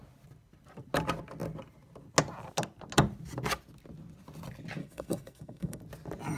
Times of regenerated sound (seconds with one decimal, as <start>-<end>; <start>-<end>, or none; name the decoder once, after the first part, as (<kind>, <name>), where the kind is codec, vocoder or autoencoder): 4.8-5.8 (codec, SNAC)